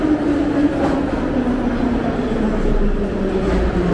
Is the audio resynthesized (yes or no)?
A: no